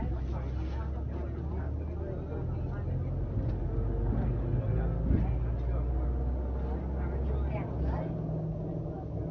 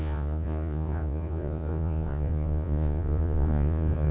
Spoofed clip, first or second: second